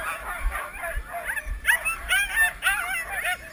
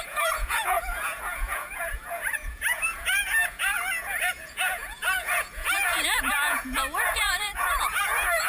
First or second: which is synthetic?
second